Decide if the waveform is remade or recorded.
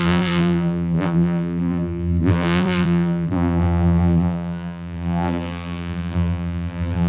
remade